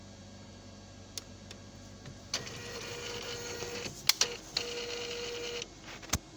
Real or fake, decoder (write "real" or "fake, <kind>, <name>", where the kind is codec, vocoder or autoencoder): real